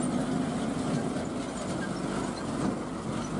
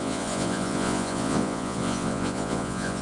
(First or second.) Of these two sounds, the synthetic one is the second